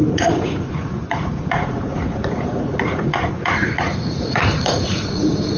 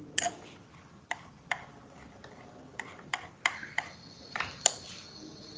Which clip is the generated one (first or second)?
first